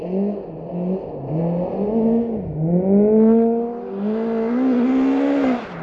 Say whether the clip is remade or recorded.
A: recorded